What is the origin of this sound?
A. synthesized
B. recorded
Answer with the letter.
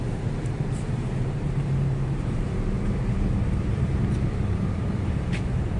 A